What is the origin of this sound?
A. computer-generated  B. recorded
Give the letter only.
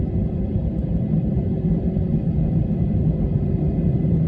A